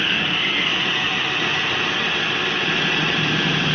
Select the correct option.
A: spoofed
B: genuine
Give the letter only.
B